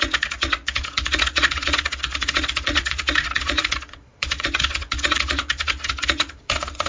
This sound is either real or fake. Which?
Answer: fake